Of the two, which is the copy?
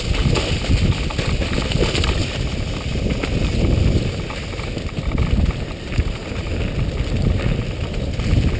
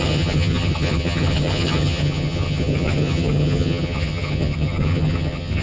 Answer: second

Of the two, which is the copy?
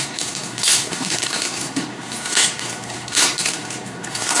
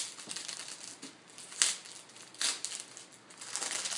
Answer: first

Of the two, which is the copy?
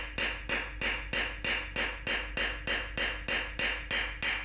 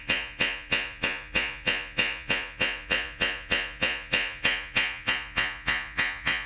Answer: second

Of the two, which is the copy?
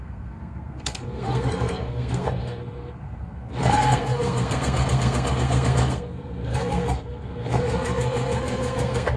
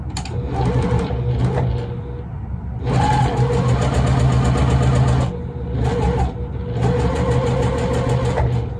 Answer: first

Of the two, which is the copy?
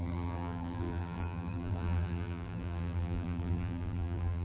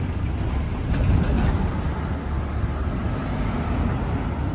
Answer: first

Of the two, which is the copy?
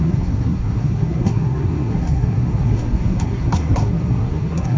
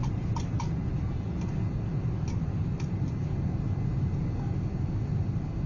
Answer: first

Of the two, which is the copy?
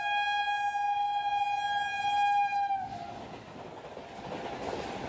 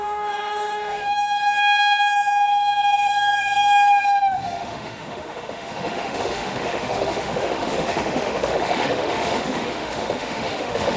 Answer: second